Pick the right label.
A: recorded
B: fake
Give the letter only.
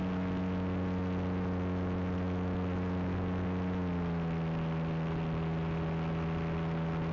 A